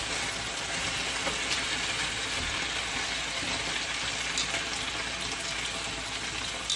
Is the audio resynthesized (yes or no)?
no